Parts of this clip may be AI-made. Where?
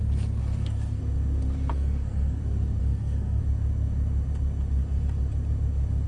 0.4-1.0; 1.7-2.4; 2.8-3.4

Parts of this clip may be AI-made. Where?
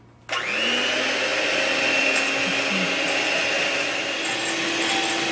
none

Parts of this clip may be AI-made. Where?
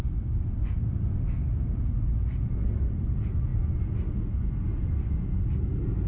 none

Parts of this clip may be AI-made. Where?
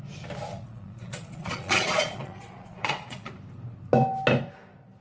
0.5-3.3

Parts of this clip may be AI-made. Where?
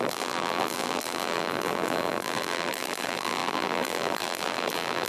0.0-5.1